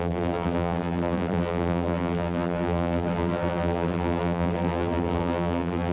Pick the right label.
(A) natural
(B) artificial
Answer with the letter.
B